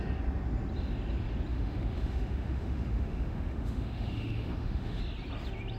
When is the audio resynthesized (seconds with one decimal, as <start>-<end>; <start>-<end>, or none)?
1.5-5.0